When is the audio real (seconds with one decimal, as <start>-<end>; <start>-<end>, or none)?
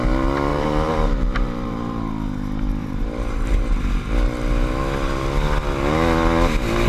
0.0-0.5; 2.1-2.8; 4.0-6.9